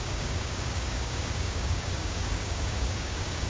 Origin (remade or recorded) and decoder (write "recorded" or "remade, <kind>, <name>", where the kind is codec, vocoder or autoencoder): remade, codec, DAC